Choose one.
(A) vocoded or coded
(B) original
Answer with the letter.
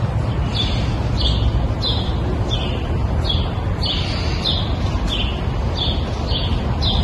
B